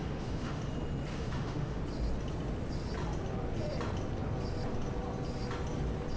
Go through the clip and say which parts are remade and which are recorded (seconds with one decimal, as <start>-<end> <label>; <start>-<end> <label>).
0.0-0.6 remade; 0.6-1.1 recorded; 1.1-1.8 remade; 1.8-6.2 recorded